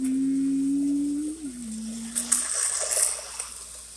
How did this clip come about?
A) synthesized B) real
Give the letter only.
B